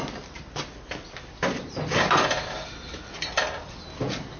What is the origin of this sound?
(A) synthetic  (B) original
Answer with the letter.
B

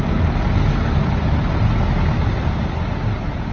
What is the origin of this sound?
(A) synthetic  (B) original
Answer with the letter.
B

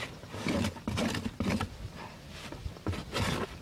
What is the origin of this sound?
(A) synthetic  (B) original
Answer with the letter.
B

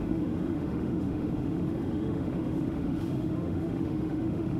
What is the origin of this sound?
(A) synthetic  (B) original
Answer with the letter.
A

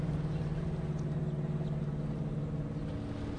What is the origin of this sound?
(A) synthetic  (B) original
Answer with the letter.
B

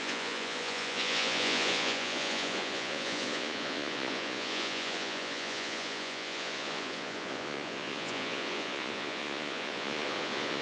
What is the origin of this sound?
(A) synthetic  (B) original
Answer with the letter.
A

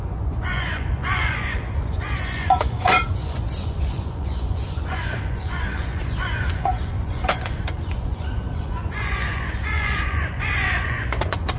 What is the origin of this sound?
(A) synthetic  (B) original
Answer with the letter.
A